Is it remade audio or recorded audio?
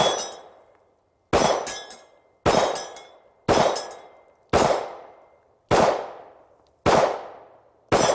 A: recorded